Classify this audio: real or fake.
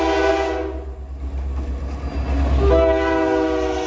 real